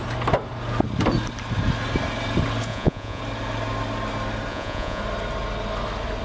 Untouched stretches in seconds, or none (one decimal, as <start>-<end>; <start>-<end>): 0.0-2.7; 3.2-4.5; 5.0-6.2